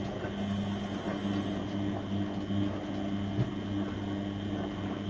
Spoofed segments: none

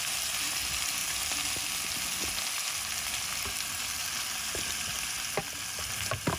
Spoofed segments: none

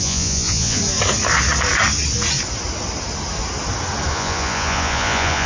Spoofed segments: 0.0-0.8; 4.1-5.5

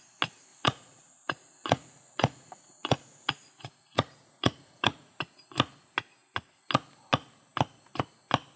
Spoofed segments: 0.5-5.2

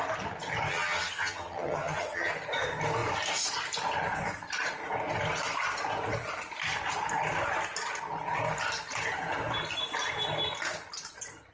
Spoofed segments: 0.7-2.3

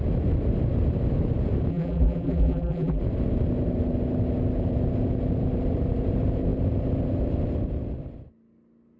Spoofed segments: 1.7-3.0